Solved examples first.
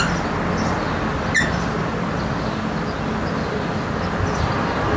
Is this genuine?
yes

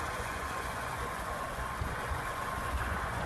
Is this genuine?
no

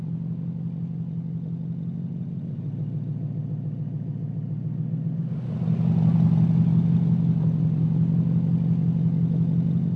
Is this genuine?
yes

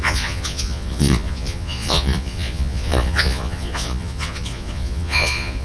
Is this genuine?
no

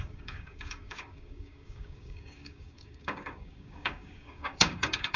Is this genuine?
no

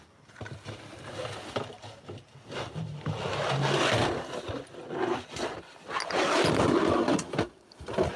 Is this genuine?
yes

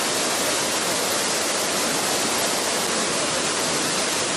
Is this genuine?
yes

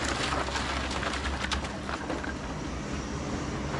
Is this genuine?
yes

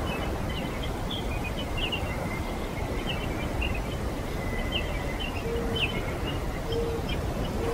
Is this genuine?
yes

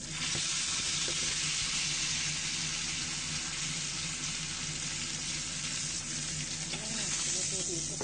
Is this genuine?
yes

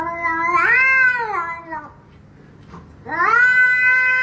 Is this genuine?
yes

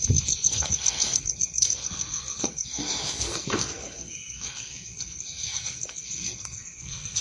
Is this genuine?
no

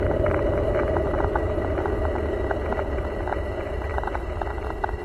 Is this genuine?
yes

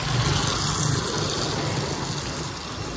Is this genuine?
yes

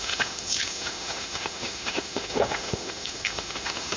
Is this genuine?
no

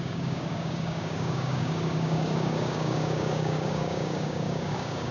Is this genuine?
no